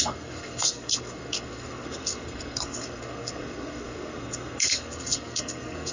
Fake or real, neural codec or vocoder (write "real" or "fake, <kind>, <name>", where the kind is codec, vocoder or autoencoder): fake, codec, SNAC